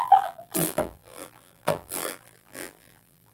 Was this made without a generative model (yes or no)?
no